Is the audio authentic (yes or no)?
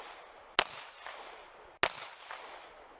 yes